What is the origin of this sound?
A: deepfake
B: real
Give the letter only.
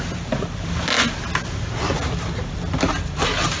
B